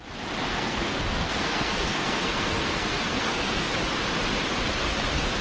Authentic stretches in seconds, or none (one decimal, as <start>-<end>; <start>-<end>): 0.0-0.5; 3.7-5.4